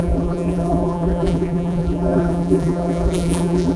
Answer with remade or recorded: remade